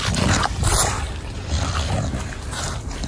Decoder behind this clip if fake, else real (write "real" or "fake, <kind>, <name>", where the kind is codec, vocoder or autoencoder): fake, vocoder, BigVGAN v2